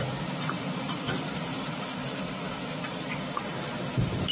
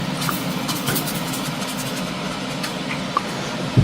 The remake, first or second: first